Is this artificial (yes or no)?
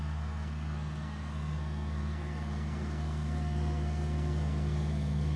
yes